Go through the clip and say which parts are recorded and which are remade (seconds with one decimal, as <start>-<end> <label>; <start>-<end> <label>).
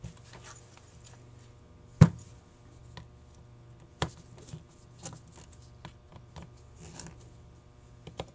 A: 0.0-8.3 recorded